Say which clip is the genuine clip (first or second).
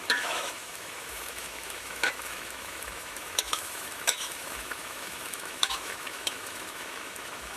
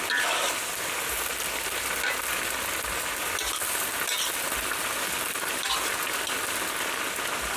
second